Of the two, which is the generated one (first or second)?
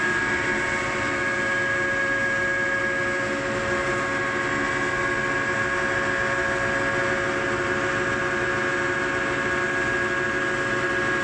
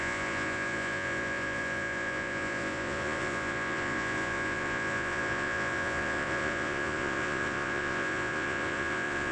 second